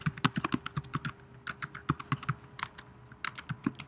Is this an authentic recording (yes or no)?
yes